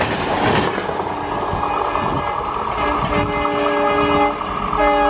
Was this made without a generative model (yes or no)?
yes